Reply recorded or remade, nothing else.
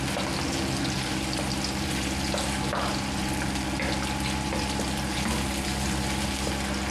recorded